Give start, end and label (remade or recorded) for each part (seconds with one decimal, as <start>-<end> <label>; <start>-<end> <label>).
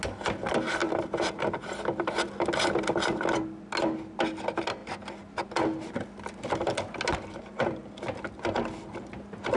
0.0-9.6 recorded